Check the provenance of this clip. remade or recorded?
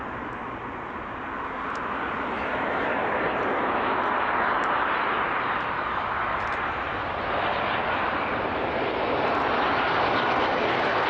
recorded